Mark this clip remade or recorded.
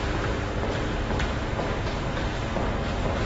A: recorded